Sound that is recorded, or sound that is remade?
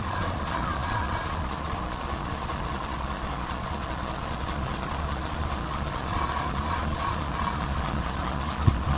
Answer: remade